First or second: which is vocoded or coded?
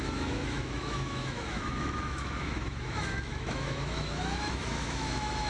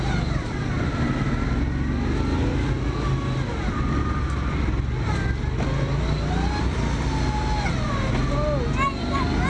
first